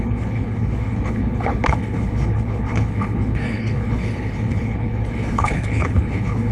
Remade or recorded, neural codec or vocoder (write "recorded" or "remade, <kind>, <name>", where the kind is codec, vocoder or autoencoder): remade, codec, HILCodec